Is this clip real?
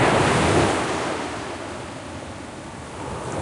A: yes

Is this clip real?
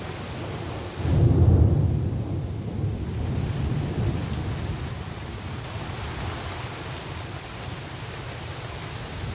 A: yes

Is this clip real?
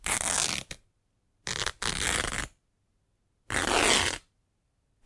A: yes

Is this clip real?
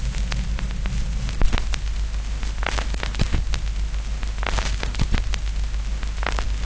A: yes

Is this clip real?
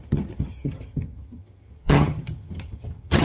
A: no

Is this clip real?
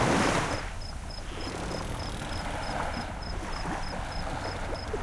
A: yes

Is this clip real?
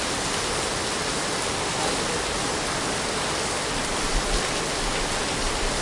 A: yes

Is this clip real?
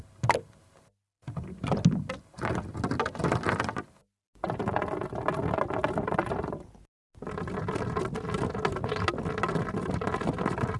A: yes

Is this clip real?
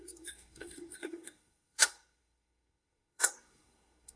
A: no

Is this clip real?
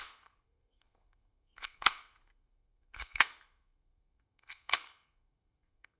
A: no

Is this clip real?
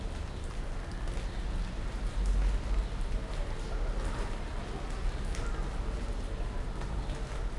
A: yes